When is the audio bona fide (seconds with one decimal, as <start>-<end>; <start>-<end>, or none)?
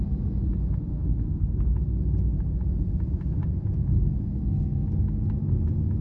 0.0-0.9; 1.7-6.0